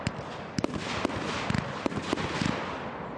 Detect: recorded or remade recorded